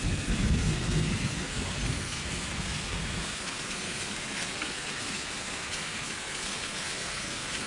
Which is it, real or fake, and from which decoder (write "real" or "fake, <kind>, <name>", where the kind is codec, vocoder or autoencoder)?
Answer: fake, codec, SNAC